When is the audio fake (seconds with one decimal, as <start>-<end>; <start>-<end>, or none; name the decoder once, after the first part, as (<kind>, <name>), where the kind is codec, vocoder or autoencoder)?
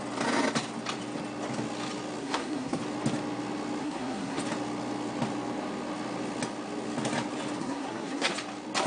2.2-2.8 (codec, SNAC); 3.8-4.4; 7.6-8.3